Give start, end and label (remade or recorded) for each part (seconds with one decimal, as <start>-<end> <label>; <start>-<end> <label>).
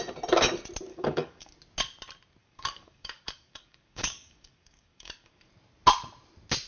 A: 0.0-0.9 recorded; 0.9-1.5 remade; 1.5-2.4 recorded; 2.4-5.5 remade; 5.5-6.7 recorded